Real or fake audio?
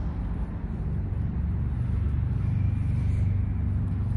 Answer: real